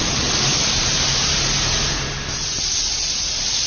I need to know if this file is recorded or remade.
recorded